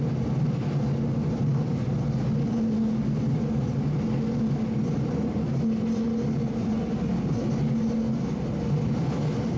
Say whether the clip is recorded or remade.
recorded